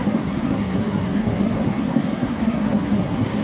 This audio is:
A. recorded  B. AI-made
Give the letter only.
B